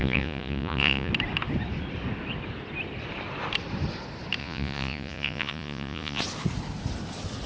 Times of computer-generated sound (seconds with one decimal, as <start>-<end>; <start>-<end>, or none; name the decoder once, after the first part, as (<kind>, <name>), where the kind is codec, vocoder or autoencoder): 0.0-1.1 (vocoder, Vocos); 4.4-6.2

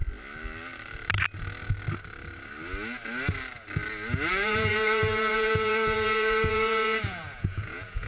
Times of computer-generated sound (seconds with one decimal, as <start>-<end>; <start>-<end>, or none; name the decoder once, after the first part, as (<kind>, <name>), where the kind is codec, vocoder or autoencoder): 4.3-8.1 (vocoder, Vocos)

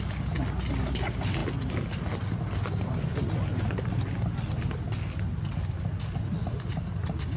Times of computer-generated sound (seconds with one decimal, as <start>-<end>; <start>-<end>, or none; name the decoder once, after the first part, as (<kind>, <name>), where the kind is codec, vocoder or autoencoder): none

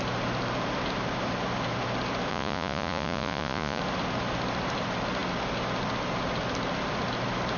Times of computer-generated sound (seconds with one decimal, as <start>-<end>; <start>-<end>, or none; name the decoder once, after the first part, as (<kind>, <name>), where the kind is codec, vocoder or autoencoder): 2.3-3.8 (vocoder, Vocos)

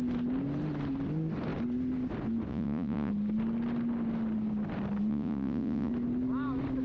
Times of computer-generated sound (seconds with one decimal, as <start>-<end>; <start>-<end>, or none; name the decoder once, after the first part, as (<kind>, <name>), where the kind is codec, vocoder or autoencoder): 2.5-3.1 (vocoder, Vocos); 5.1-5.9